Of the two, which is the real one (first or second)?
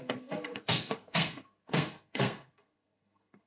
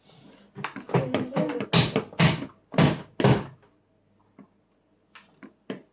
second